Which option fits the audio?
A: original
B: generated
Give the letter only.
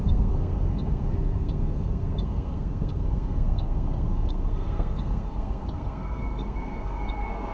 B